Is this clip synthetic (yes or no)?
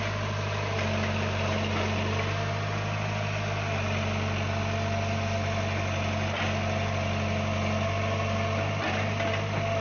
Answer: no